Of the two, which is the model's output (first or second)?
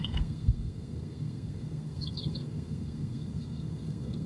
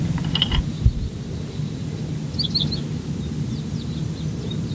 first